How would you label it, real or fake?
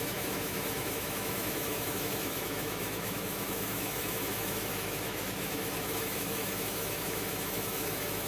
fake